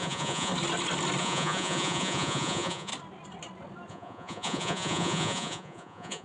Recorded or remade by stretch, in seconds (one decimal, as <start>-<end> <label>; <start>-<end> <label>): 0.0-0.5 remade; 0.5-1.2 recorded; 1.2-2.9 remade; 2.9-3.9 recorded; 3.9-6.2 remade